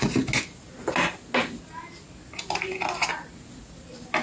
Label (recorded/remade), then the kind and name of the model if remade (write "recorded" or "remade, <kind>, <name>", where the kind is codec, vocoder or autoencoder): recorded